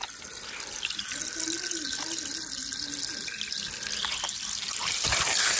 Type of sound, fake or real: real